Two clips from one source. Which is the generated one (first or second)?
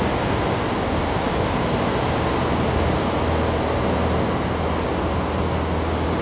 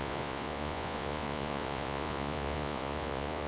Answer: second